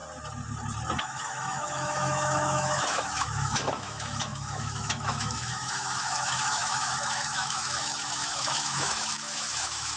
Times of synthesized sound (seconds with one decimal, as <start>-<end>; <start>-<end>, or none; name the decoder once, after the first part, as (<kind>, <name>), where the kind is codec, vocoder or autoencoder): 1.0-10.0 (autoencoder, DAC-VAE)